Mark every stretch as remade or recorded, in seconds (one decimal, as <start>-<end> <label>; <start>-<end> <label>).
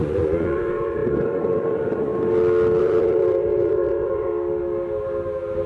0.0-2.1 remade; 2.1-2.8 recorded; 2.8-4.3 remade; 4.3-5.7 recorded